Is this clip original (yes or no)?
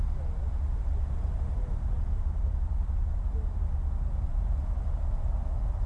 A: yes